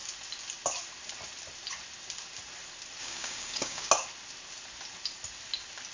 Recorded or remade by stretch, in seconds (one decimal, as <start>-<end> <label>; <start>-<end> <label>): 0.0-3.0 recorded; 3.0-3.9 remade; 3.9-5.9 recorded